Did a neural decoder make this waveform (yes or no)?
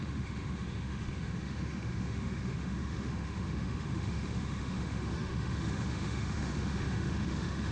yes